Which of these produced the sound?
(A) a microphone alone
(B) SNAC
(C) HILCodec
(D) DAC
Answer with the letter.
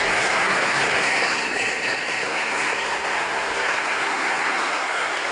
B